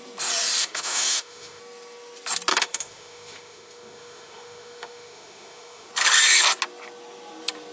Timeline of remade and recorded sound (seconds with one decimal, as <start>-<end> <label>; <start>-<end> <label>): 0.0-0.6 recorded; 0.6-1.6 remade; 1.6-2.5 recorded; 2.5-5.9 remade; 5.9-7.7 recorded